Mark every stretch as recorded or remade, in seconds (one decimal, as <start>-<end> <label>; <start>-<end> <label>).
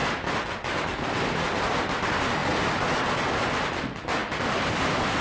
0.0-4.2 recorded; 4.2-4.8 remade; 4.8-5.2 recorded